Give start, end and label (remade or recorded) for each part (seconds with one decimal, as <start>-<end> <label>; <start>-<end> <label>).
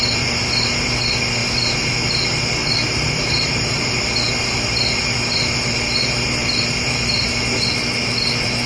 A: 0.0-2.6 recorded; 2.6-3.8 remade; 3.8-6.4 recorded; 6.4-7.4 remade; 7.4-8.7 recorded